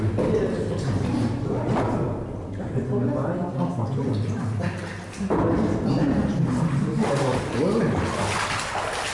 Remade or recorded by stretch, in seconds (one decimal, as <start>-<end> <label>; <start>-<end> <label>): 0.0-9.1 recorded